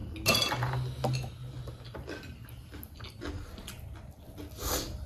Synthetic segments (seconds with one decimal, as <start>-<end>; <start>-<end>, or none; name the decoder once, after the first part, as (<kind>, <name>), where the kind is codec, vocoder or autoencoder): none